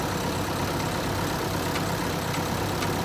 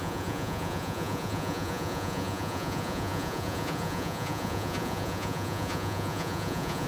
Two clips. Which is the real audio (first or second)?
first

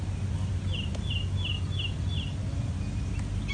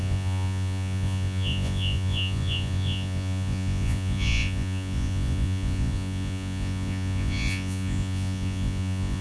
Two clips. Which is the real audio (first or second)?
first